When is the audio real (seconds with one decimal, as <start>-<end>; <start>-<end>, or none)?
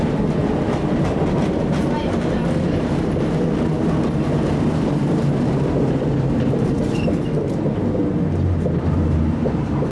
0.4-1.0; 8.0-8.8